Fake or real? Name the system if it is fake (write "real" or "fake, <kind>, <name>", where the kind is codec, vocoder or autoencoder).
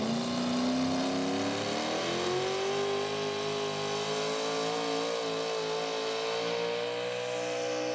real